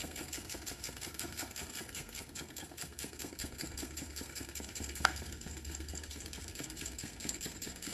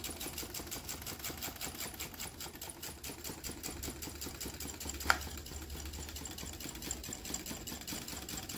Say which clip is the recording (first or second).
second